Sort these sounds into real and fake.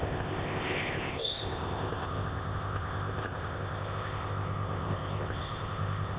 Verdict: fake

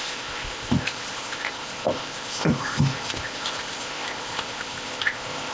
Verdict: fake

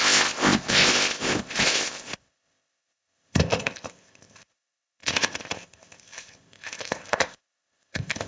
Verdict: fake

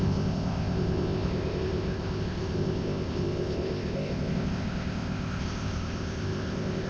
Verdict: fake